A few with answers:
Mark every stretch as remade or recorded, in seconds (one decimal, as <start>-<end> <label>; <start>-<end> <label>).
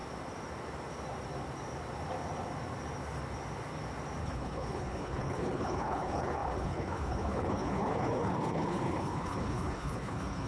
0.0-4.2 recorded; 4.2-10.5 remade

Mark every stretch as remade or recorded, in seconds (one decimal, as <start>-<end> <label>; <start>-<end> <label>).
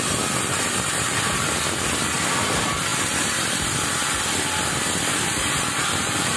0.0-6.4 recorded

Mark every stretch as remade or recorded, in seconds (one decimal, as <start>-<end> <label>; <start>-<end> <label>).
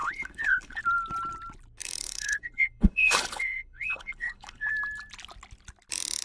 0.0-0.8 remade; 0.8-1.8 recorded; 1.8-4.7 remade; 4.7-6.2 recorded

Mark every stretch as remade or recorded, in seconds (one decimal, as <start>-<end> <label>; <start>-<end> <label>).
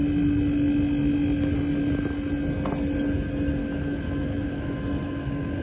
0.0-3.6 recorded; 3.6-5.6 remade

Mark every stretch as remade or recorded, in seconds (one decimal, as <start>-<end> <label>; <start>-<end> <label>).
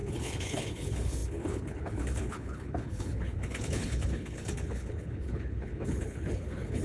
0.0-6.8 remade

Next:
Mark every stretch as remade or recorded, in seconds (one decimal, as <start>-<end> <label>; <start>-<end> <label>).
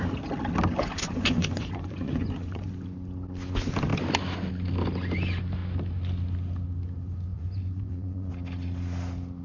0.0-0.7 recorded; 0.7-2.7 remade; 2.7-7.3 recorded; 7.3-8.3 remade; 8.3-9.4 recorded